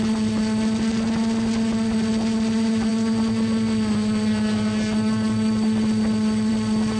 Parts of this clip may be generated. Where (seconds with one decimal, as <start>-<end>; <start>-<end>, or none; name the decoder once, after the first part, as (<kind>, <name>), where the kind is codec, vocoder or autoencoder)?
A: none

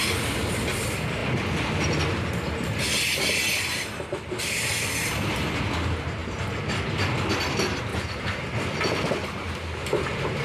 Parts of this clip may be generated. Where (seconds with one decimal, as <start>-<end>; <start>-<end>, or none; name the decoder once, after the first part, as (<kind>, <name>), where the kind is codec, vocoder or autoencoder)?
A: 7.9-8.5 (vocoder, BigVGAN v2)

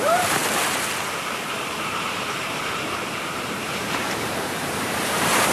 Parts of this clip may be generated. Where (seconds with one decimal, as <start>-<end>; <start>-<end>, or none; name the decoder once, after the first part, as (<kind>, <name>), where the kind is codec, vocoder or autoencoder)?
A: 0.0-0.4 (vocoder, BigVGAN v2); 1.1-5.5

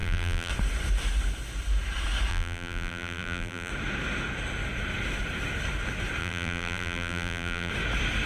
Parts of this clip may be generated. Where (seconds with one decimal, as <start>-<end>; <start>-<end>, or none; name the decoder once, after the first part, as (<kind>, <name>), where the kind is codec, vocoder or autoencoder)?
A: 0.0-0.5 (vocoder, BigVGAN v2); 2.3-3.7; 6.2-7.7

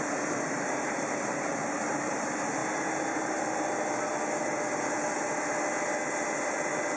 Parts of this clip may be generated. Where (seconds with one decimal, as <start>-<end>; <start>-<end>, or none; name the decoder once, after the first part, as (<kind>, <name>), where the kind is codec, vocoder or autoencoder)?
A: 0.0-2.6 (vocoder, BigVGAN v2)

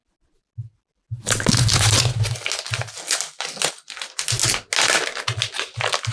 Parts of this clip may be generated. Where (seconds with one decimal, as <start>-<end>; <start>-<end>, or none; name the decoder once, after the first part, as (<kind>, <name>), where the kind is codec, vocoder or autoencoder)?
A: none

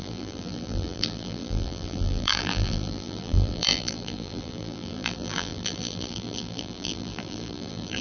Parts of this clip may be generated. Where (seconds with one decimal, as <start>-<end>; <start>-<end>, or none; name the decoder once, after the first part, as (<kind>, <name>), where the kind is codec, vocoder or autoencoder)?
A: 0.0-8.0 (vocoder, BigVGAN v2)

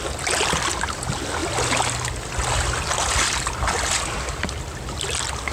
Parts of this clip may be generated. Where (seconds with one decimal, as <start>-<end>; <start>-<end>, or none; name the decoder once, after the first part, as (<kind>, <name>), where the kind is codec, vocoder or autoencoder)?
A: none